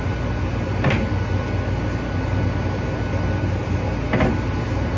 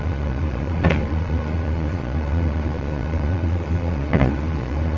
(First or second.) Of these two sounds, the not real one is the second